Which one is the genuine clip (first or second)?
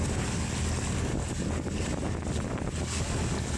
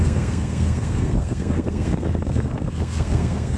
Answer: first